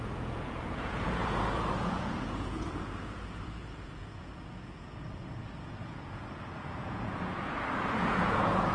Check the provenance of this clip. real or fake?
fake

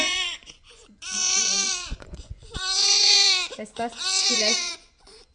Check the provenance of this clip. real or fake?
fake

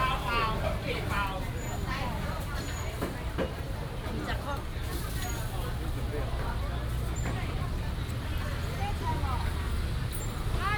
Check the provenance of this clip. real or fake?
real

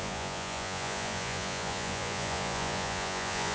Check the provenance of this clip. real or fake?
fake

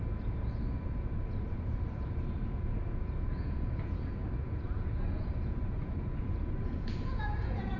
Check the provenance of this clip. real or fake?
fake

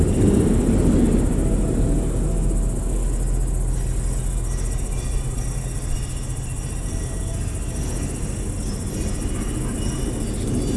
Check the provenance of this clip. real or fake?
real